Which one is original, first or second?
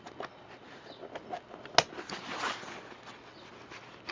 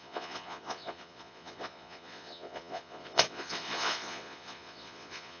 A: first